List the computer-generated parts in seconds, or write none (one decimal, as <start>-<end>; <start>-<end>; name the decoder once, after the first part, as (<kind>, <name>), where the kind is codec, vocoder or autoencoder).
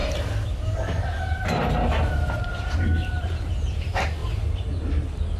2.1-5.4 (vocoder, BigVGAN v2)